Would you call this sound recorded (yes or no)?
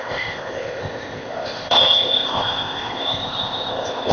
no